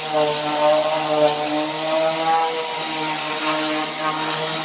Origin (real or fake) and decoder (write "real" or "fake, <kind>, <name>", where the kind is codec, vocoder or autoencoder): real